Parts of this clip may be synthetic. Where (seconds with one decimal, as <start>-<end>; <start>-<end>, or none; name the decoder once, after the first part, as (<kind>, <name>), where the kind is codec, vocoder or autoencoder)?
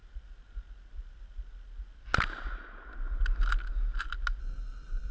4.4-5.1 (codec, SNAC)